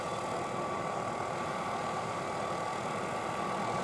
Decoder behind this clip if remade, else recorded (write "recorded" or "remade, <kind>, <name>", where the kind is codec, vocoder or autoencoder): recorded